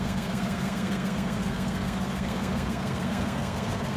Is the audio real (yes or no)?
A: no